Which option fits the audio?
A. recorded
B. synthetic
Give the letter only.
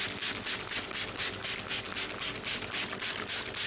A